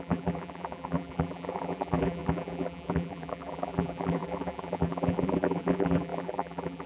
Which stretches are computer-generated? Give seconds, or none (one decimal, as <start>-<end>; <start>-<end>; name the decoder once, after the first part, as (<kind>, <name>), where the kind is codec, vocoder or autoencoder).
0.0-6.9 (vocoder, BigVGAN v2)